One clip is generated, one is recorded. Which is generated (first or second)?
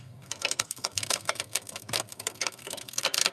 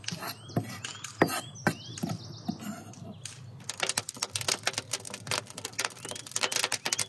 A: first